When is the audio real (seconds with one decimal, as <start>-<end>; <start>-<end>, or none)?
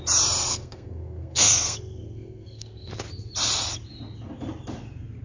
0.0-0.5; 2.9-5.2